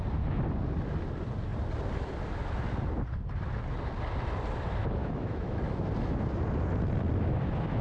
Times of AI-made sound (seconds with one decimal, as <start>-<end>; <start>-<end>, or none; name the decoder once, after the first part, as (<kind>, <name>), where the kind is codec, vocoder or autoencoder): 5.0-5.7 (autoencoder, DAC-VAE)